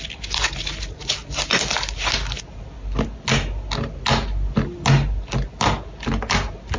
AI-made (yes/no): no